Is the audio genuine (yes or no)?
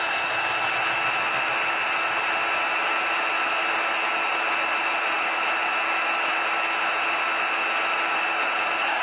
yes